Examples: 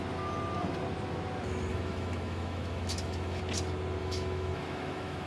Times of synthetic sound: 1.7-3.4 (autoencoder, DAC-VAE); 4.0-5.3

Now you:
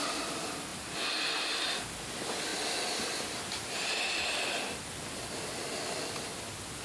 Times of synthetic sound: none

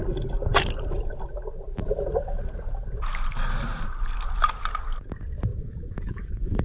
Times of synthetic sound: 5.5-6.6 (autoencoder, DAC-VAE)

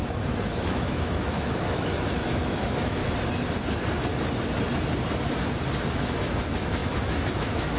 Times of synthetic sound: 0.5-3.0 (autoencoder, DAC-VAE); 5.9-7.8